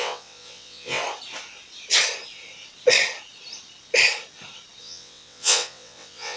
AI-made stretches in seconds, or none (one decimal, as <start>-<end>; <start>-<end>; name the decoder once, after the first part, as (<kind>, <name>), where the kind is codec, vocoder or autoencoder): 0.0-1.0 (vocoder, WaveNeXt); 4.8-6.4